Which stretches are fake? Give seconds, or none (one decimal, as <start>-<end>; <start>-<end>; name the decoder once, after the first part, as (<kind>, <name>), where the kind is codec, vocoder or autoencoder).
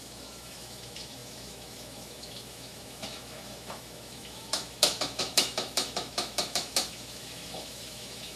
0.0-8.4 (autoencoder, DAC-VAE)